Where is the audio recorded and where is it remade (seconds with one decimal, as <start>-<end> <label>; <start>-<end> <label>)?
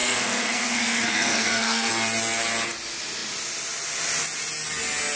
0.0-1.9 remade; 1.9-5.2 recorded